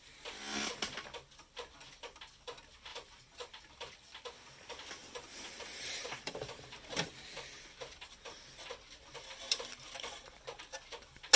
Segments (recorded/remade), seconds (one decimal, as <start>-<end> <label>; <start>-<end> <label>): 0.0-2.9 recorded; 2.9-3.6 remade; 3.6-5.0 recorded; 5.0-6.6 remade; 6.6-11.4 recorded